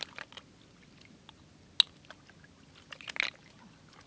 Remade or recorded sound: recorded